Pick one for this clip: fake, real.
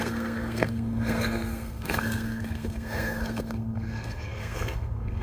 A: fake